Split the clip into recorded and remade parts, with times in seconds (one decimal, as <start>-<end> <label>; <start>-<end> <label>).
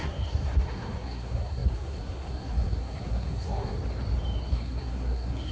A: 0.0-3.8 remade; 3.8-4.5 recorded; 4.5-5.5 remade